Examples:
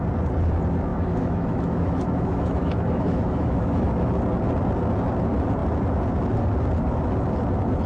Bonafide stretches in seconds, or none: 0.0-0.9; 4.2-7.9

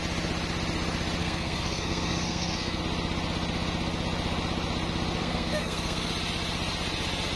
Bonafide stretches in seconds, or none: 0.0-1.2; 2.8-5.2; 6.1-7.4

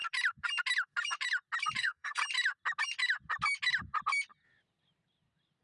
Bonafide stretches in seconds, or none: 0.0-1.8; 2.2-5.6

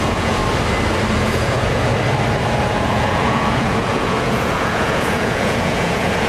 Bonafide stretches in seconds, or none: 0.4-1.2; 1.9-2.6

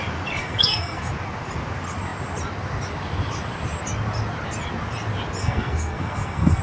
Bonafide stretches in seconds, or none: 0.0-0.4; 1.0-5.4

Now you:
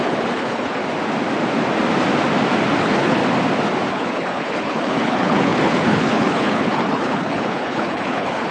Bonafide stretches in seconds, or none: 0.8-2.8; 3.2-3.9

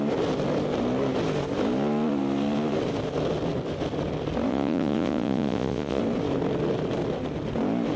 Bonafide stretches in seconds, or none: 0.0-4.5; 6.0-8.0

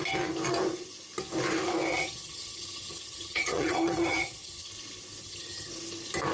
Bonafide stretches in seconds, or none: 0.0-1.9; 4.7-5.2; 5.7-6.3